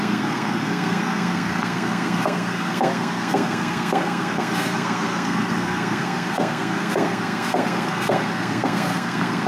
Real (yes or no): no